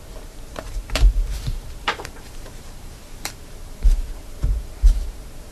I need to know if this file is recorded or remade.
remade